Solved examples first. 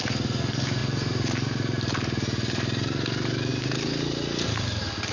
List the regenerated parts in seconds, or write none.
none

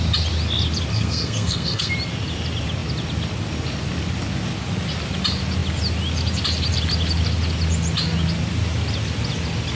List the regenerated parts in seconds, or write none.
0.9-1.9 (codec, SNAC)

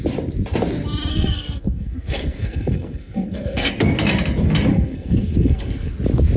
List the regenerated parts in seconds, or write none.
1.1-3.7 (codec, SNAC); 4.7-5.9